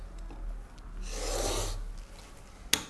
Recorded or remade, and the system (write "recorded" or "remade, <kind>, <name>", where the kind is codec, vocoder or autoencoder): recorded